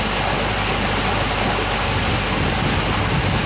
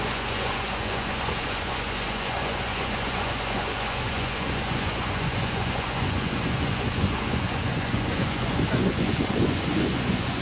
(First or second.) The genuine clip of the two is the first